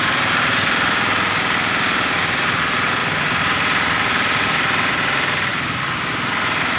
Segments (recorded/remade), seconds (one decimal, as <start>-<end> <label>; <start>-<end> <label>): 0.0-3.0 recorded; 3.0-3.6 remade; 3.6-5.5 recorded; 5.5-6.8 remade